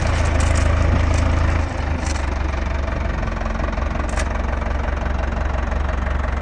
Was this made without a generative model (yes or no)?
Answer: yes